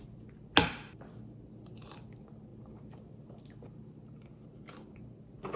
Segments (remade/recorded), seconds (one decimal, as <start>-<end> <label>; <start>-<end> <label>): 0.0-5.6 recorded